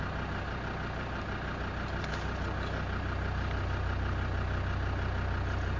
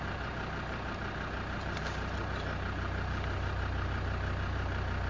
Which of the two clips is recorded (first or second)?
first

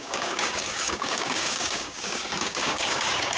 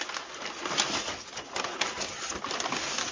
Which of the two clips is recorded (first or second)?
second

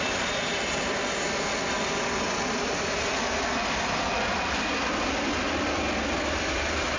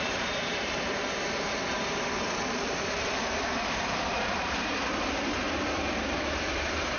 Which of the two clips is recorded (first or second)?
first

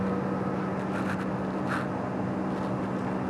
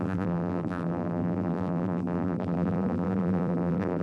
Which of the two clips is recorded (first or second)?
first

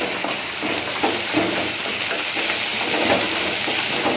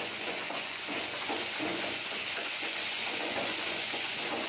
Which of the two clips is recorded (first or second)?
first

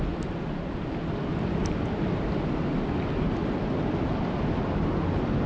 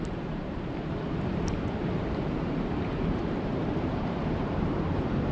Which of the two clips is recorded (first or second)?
first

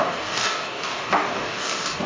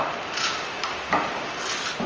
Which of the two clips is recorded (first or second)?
second